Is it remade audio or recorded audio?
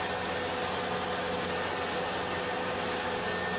recorded